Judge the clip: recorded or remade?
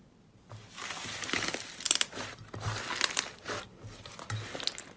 recorded